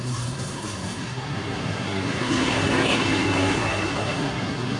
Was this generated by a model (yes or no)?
yes